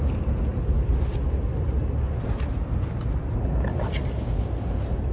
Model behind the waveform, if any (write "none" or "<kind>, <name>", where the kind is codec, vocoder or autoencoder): none